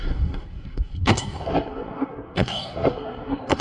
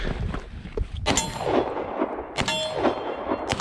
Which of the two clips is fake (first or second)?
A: first